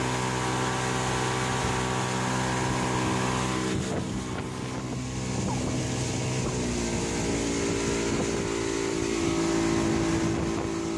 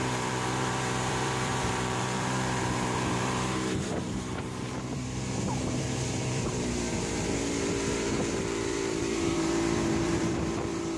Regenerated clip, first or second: second